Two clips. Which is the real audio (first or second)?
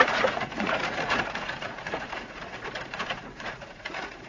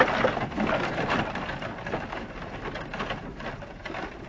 second